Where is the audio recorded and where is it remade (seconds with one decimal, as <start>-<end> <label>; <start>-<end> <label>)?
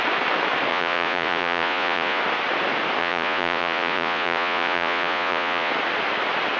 0.0-0.7 recorded; 0.7-2.2 remade; 2.2-3.0 recorded; 3.0-5.7 remade; 5.7-6.6 recorded